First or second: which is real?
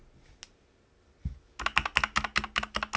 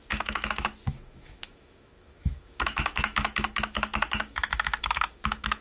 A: first